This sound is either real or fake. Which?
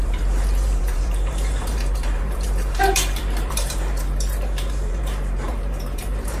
fake